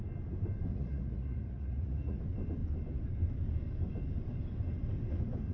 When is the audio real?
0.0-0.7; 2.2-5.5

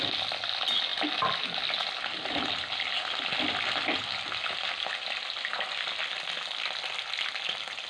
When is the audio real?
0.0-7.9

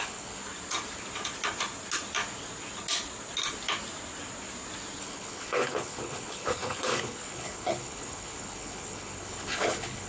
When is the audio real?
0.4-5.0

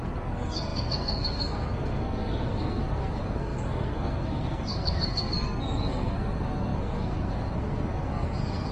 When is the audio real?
none

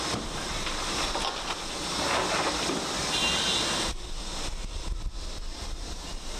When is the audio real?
0.0-3.0; 4.8-5.5